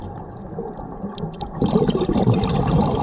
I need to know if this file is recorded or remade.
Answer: recorded